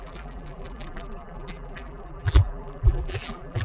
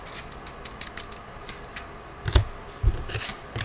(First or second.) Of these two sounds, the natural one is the second